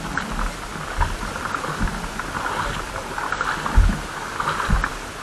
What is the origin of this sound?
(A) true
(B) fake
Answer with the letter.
A